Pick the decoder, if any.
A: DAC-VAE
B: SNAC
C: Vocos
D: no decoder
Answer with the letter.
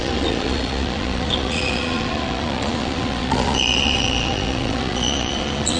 C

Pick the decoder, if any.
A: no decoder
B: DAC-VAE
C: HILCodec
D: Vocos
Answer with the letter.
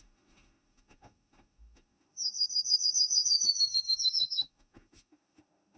B